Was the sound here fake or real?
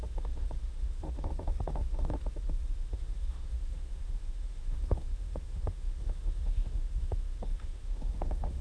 fake